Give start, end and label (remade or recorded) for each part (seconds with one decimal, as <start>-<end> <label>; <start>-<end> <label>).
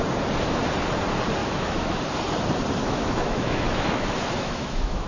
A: 0.0-1.4 recorded; 1.4-2.0 remade; 2.0-2.8 recorded; 2.8-5.1 remade